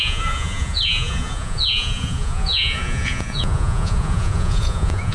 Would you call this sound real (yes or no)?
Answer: no